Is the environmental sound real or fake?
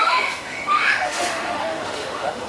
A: fake